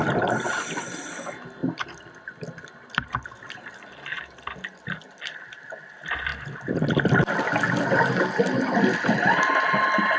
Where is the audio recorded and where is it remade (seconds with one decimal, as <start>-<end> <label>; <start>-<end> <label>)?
0.0-10.2 recorded